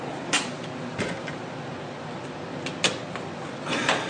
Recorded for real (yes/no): yes